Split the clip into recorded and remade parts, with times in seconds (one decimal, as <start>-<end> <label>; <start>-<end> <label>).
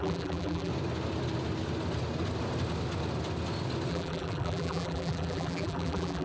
0.0-0.7 remade; 0.7-3.9 recorded; 3.9-6.2 remade